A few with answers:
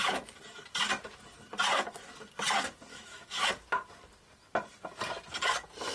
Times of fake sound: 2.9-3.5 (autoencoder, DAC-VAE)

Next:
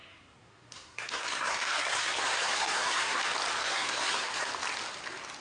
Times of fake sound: 0.0-3.2 (codec, SNAC); 3.6-4.5

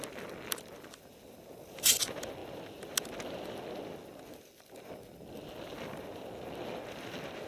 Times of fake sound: none

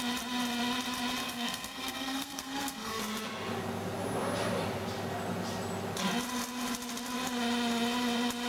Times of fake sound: 1.2-3.0 (codec, SNAC)

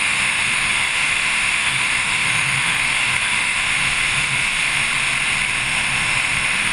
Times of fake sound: 0.0-4.9 (autoencoder, DAC-VAE); 5.5-6.7

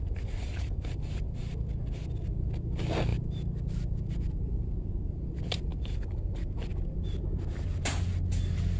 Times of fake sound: none

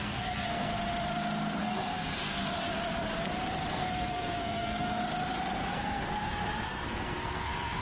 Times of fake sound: 0.0-0.7 (codec, SNAC); 1.6-2.4; 3.7-5.0; 5.7-7.8